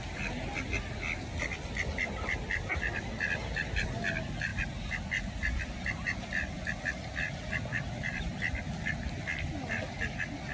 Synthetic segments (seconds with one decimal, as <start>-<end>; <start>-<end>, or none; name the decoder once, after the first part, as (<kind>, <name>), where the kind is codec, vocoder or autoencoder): none